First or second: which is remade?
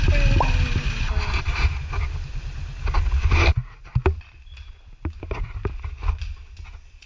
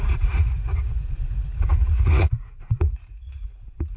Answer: second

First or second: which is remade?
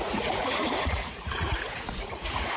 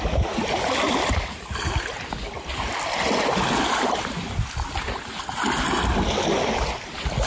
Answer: first